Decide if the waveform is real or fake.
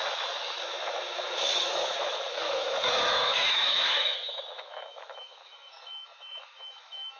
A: fake